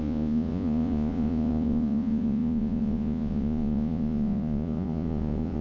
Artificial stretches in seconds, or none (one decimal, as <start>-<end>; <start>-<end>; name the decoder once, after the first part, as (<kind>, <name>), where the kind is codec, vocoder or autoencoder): 0.0-5.6 (vocoder, Vocos)